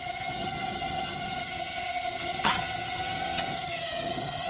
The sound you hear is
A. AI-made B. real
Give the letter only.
A